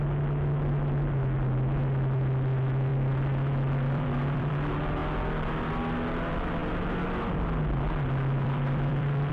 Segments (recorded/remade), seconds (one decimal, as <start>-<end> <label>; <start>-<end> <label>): 0.0-2.9 recorded; 2.9-4.5 remade; 4.5-8.4 recorded; 8.4-9.3 remade